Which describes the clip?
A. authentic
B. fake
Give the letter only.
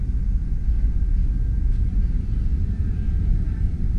A